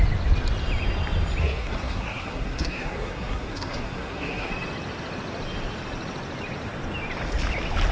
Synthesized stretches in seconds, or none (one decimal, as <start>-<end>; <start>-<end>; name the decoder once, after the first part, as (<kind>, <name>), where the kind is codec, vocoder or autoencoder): 1.4-4.5 (codec, SNAC)